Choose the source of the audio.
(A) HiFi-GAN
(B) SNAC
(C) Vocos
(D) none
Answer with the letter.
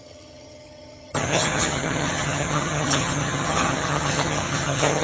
A